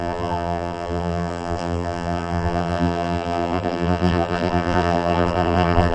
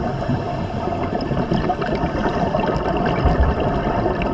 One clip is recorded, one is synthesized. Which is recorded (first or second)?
second